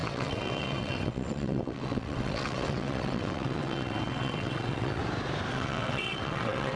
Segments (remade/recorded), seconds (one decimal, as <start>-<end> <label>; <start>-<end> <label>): 0.0-5.0 remade; 5.0-5.5 recorded; 5.5-6.8 remade